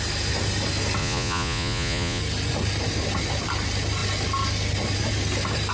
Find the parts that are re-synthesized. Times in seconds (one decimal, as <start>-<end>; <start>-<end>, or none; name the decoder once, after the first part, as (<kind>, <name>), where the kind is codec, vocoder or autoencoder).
1.0-2.2 (vocoder, Vocos)